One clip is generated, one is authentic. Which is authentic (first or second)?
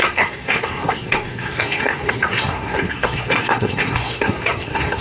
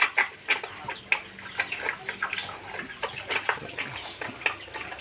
second